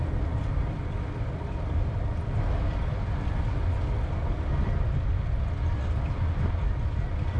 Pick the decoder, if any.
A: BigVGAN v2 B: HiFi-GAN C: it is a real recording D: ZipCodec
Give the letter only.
C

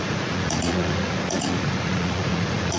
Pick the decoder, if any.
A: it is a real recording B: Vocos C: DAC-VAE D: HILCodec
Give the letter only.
B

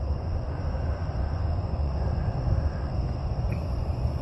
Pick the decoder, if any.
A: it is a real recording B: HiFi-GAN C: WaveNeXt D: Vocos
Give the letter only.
D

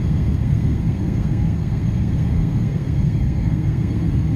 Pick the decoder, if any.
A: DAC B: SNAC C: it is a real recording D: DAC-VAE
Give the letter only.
B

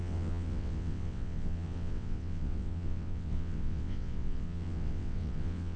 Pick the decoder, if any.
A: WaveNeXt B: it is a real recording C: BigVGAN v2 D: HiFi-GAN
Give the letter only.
A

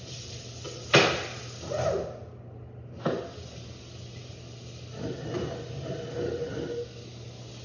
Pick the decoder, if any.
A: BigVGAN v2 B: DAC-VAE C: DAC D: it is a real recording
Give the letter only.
D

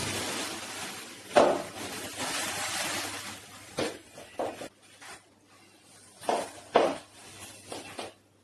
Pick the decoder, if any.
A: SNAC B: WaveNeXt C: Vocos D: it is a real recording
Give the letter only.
D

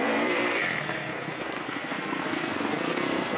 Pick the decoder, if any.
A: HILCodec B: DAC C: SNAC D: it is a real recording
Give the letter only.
C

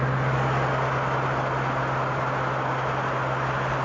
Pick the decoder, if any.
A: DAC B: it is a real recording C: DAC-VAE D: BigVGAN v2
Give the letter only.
B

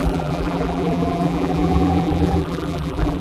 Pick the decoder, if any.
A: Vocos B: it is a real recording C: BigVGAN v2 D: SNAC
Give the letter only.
C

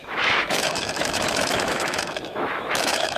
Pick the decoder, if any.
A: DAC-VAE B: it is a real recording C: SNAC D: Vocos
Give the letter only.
A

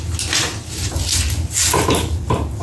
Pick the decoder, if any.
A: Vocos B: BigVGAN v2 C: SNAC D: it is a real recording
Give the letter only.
D